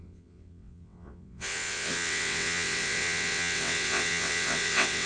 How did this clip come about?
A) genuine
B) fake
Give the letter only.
B